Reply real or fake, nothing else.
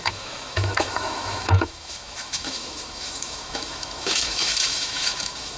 fake